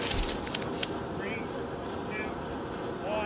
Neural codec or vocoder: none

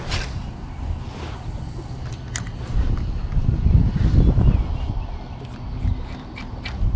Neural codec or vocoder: none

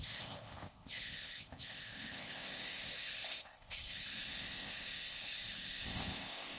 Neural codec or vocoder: codec, ZipCodec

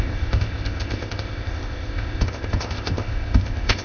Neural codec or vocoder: codec, ZipCodec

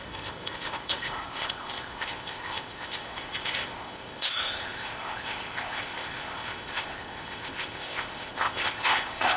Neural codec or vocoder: codec, ZipCodec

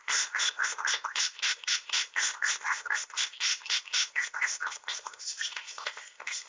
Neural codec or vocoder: codec, ZipCodec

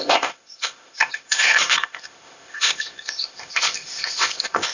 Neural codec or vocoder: codec, ZipCodec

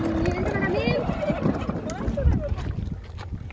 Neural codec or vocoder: none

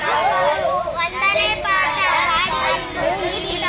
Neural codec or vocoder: none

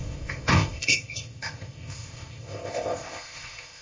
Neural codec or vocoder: codec, ZipCodec